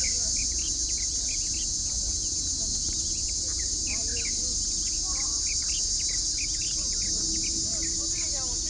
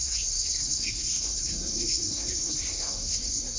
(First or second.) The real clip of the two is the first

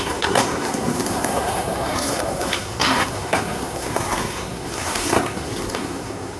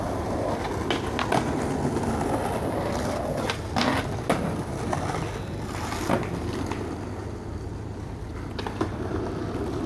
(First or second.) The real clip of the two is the second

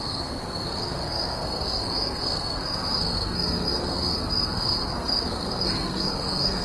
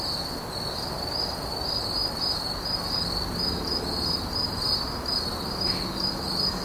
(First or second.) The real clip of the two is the second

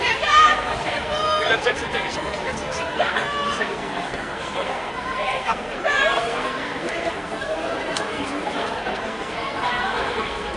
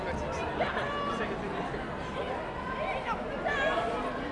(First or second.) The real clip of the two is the second